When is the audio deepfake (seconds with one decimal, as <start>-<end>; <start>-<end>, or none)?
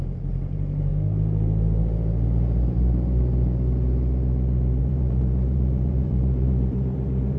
0.0-0.9; 4.8-7.4